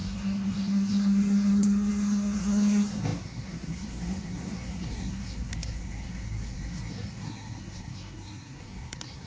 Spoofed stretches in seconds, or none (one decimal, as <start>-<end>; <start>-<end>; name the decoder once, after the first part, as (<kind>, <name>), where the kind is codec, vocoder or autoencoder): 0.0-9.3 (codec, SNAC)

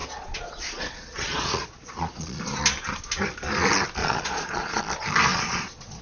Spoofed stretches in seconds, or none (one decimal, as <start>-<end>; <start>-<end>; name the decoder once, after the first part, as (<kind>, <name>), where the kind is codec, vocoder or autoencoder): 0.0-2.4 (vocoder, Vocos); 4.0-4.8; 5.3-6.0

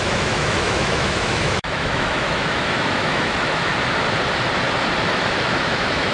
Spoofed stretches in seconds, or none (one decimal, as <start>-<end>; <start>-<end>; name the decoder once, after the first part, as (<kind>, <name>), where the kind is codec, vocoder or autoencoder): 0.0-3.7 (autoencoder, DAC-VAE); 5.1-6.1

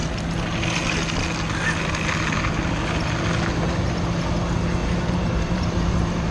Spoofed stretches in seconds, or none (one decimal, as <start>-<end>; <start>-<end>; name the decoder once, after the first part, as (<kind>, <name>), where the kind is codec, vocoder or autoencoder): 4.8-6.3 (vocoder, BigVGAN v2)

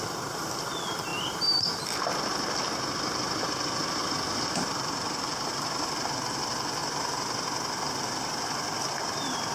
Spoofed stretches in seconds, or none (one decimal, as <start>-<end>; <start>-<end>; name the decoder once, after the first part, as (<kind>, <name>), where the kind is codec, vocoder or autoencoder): 0.0-1.1 (vocoder, BigVGAN v2); 3.4-9.5

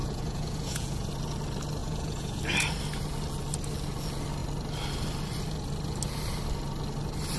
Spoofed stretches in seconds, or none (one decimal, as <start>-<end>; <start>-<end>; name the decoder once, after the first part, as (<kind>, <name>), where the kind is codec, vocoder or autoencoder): 0.0-1.1 (vocoder, Vocos); 1.8-2.4

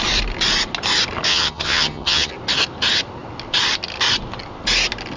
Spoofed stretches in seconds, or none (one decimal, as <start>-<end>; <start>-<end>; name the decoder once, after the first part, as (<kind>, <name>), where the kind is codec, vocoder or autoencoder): 1.3-2.3 (vocoder, HiFi-GAN)

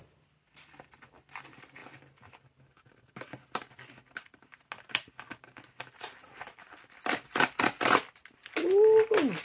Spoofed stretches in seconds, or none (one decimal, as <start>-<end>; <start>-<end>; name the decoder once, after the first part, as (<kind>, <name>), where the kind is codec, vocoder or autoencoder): none